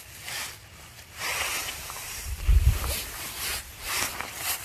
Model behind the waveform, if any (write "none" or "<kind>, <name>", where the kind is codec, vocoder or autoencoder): none